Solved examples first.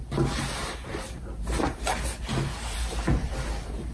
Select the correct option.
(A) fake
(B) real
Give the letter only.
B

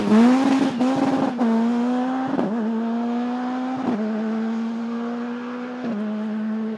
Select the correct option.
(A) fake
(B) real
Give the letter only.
B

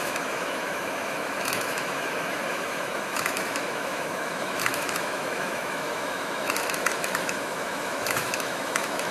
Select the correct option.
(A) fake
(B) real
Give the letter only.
A